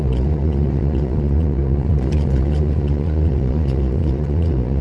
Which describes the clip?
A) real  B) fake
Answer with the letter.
B